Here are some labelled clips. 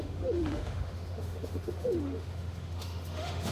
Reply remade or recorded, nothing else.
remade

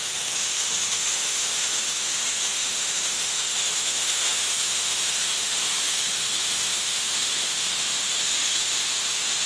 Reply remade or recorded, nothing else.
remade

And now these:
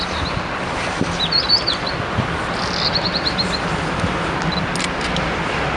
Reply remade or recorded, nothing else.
recorded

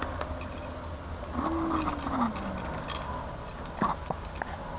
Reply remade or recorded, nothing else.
recorded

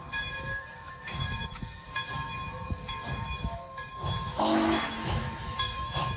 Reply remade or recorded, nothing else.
remade